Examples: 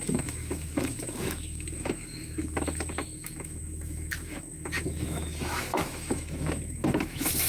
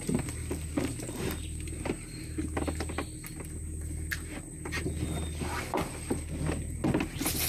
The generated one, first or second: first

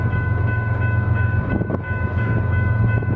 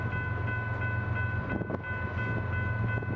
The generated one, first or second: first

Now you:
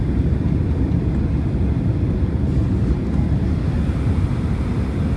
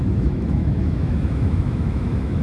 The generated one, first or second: second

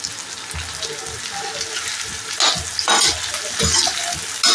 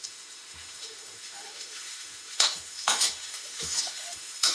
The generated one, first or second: second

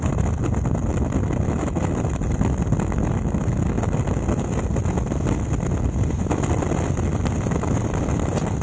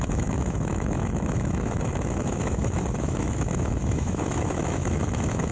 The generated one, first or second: second